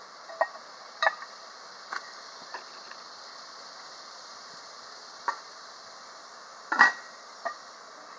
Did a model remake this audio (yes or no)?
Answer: yes